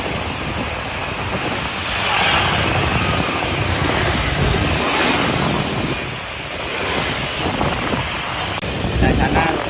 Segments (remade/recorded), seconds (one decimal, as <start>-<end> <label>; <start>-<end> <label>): 0.0-9.7 recorded